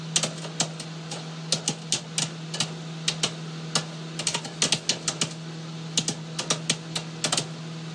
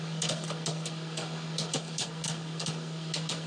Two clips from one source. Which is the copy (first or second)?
second